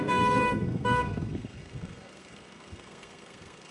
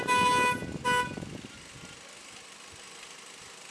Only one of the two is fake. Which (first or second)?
first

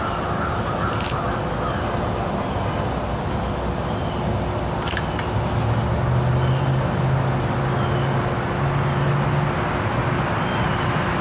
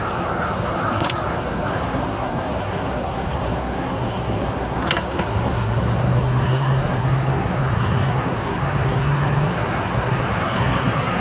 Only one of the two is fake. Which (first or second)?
second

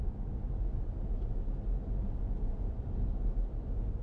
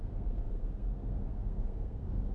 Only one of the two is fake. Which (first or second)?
second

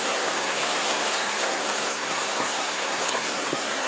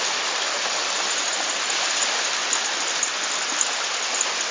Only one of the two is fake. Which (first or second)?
first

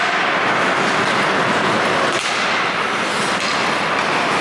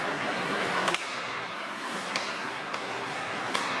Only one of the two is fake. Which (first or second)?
second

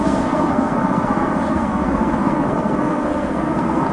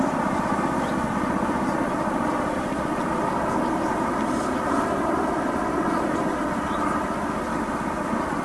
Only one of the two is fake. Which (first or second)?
first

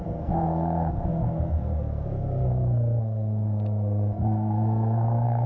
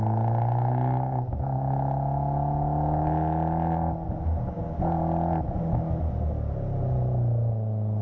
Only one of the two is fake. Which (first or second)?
first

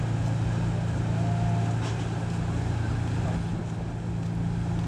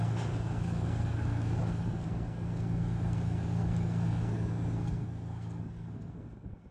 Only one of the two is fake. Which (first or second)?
second